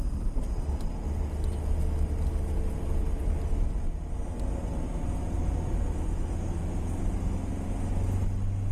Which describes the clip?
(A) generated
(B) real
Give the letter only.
B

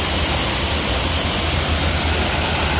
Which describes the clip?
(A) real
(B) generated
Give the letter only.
A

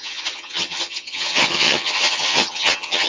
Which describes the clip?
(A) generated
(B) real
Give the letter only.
A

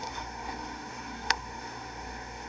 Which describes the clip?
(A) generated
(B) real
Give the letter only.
A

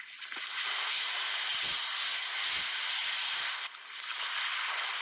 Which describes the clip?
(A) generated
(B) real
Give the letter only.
B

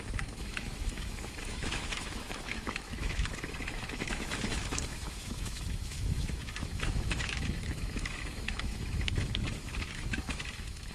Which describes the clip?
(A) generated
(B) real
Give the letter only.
A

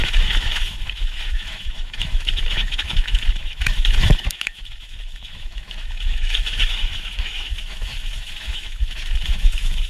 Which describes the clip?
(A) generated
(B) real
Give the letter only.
A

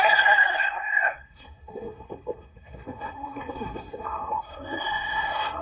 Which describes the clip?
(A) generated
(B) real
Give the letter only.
A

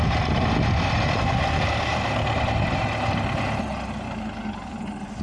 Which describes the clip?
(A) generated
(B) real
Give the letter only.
B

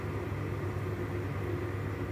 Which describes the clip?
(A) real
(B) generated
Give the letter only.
A